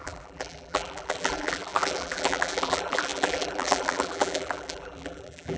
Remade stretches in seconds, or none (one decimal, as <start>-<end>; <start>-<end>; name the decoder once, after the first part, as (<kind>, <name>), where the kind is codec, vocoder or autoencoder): 0.0-5.6 (vocoder, BigVGAN v2)